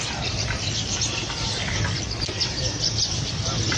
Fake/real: real